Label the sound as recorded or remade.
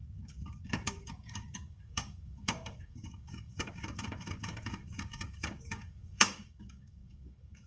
remade